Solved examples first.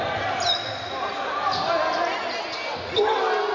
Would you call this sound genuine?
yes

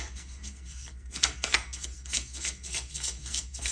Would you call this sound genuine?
no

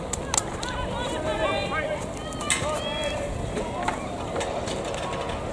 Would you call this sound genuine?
yes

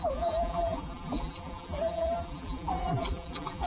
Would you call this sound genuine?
no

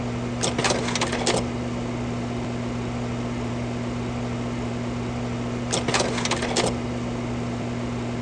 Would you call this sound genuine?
yes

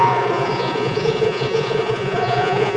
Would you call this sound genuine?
no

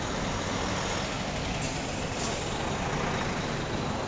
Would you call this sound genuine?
yes